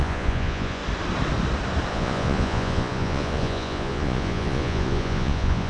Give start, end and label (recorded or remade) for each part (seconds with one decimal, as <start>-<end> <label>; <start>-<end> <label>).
0.0-0.8 remade; 0.8-1.9 recorded; 1.9-5.7 remade